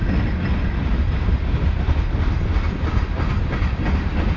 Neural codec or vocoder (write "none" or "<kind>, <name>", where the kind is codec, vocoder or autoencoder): none